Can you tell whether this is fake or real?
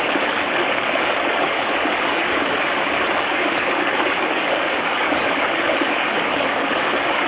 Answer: fake